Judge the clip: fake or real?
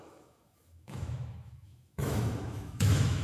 fake